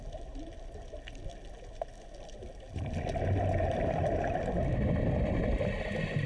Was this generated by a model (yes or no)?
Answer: no